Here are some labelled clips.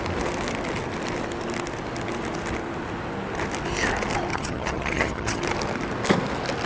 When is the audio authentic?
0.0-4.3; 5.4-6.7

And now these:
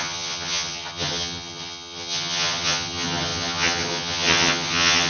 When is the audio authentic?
none